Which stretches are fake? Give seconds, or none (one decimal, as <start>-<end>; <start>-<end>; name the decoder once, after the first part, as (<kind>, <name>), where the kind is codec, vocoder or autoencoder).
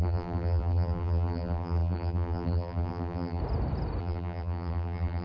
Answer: 0.0-3.4 (vocoder, BigVGAN v2); 4.0-5.2